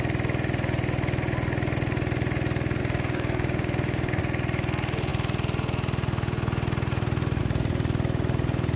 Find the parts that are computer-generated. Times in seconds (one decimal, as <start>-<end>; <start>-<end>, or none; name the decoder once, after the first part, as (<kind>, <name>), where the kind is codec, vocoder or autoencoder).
2.8-4.2 (codec, DAC)